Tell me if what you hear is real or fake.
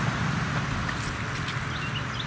real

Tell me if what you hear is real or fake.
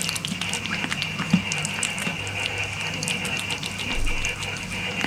real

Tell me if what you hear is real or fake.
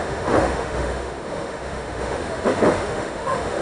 fake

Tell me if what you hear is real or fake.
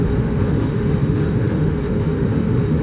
fake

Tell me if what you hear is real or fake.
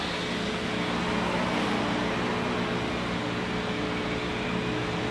real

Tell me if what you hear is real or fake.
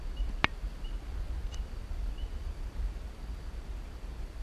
real